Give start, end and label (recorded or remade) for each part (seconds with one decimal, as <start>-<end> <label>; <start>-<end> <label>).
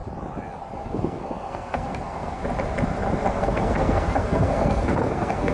0.0-0.8 recorded; 0.8-2.4 remade; 2.4-3.3 recorded; 3.3-5.5 remade